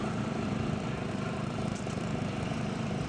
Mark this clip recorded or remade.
remade